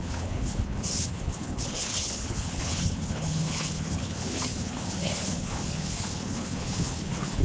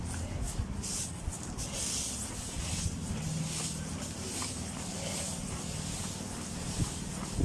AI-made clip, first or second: first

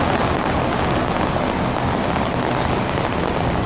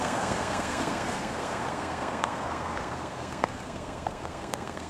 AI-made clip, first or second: second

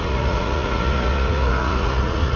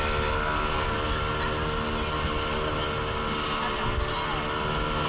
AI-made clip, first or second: first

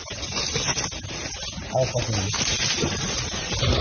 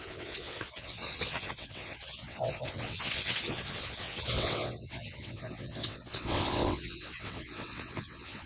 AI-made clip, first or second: second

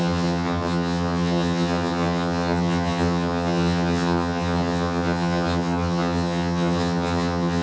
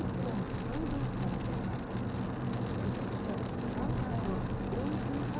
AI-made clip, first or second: first